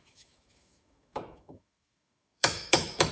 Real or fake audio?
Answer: fake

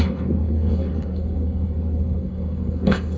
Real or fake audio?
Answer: fake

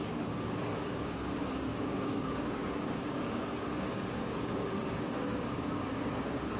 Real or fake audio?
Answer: fake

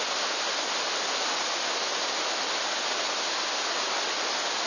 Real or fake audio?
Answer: real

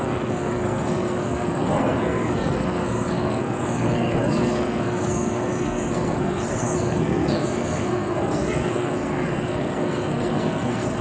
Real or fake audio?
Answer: fake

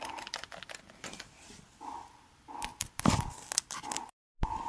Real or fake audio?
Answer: real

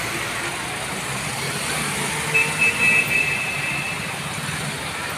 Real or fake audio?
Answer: real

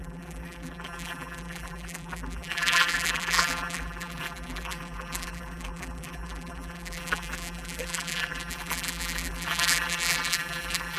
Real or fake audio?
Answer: fake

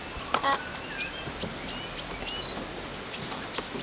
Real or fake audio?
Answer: real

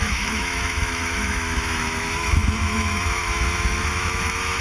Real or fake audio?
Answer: fake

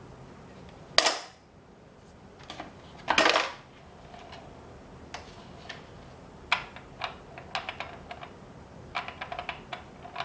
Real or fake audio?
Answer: real